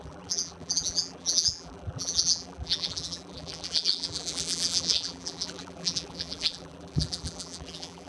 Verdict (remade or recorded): remade